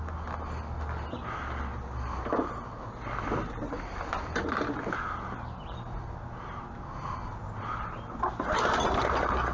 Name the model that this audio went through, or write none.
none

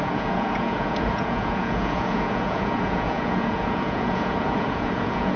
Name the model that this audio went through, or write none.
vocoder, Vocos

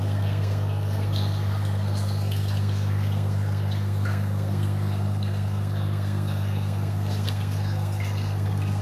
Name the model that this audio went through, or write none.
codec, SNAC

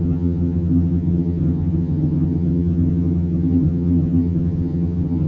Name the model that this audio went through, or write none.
vocoder, HiFi-GAN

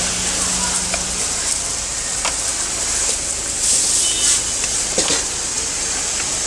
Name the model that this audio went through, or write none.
none